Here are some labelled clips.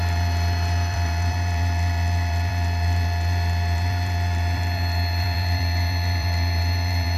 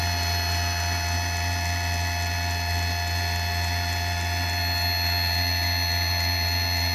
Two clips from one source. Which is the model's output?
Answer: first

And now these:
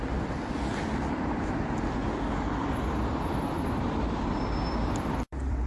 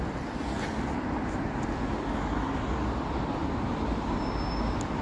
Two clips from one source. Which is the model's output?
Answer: first